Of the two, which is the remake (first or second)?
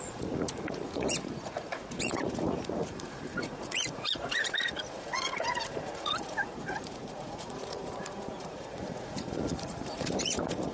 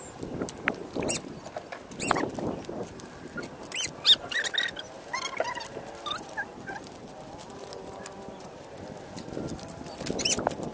first